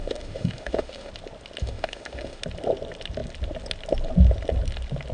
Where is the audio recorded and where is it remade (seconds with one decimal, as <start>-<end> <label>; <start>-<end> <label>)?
0.0-1.1 remade; 1.1-1.6 recorded; 1.6-2.4 remade; 2.4-5.1 recorded